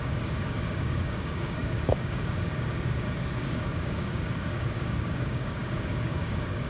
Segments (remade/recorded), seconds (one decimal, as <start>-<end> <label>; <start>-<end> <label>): 0.0-6.7 remade